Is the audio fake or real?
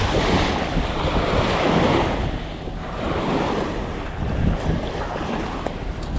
real